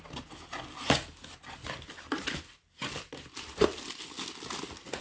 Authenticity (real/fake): real